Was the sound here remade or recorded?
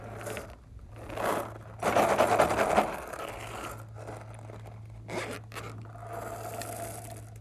recorded